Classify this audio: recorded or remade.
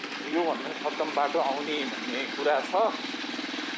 recorded